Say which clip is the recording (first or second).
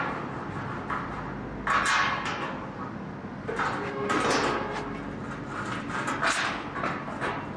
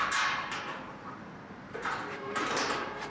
first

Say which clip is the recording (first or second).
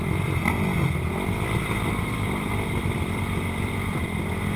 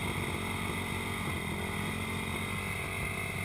second